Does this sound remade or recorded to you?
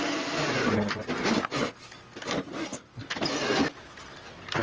recorded